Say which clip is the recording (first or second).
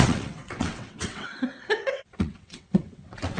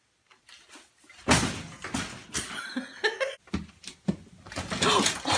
second